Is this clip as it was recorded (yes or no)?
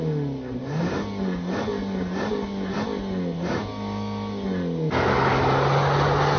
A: yes